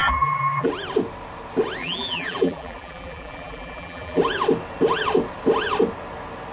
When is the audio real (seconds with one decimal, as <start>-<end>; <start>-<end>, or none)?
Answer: 0.7-1.8; 4.2-6.5